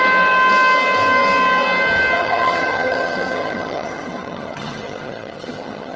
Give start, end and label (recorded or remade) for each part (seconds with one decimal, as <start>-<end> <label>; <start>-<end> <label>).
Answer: 0.0-2.2 recorded; 2.2-6.0 remade